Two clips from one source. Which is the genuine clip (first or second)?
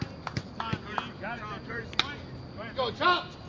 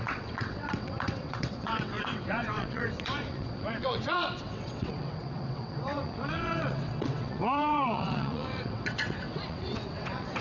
first